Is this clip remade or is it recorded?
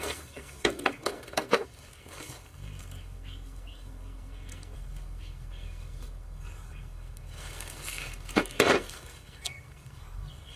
remade